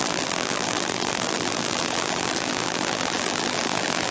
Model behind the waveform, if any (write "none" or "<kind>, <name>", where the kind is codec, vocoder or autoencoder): vocoder, BigVGAN v2